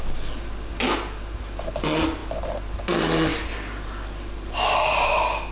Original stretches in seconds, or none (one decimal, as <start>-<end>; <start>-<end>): 0.0-5.5